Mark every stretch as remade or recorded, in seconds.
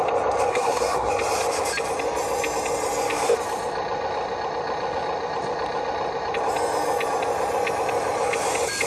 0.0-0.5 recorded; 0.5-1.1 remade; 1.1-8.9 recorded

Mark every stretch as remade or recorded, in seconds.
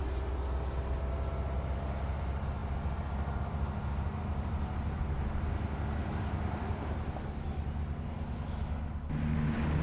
0.0-9.8 recorded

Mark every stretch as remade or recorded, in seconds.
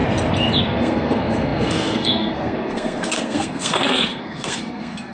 0.0-0.6 recorded; 0.6-5.1 remade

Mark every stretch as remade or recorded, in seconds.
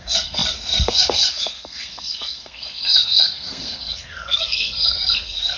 0.0-5.6 remade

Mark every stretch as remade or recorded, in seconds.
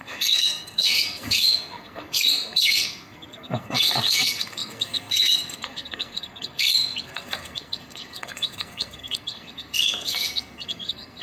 0.0-11.2 remade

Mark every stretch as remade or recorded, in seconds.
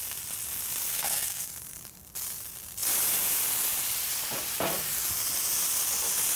0.0-0.9 recorded; 0.9-1.5 remade; 1.5-6.4 recorded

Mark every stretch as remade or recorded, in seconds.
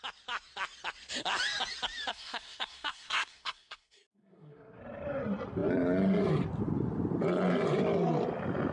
0.0-2.1 recorded; 2.1-4.8 remade; 4.8-8.7 recorded